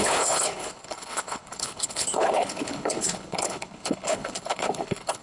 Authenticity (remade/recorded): remade